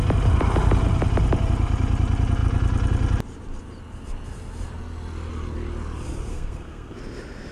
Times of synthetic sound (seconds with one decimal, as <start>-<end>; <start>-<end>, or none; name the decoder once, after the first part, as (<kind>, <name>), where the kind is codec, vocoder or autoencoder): 6.3-7.0 (codec, SNAC)